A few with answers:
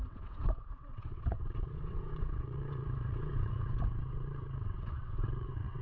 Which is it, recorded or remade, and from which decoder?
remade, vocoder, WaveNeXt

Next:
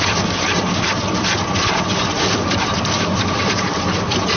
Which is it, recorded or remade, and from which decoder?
recorded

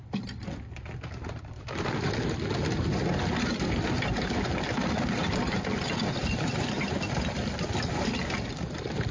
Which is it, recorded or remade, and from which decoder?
recorded